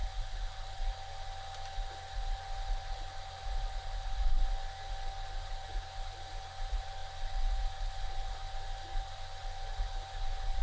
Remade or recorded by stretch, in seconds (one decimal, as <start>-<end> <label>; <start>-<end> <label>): 0.0-10.6 recorded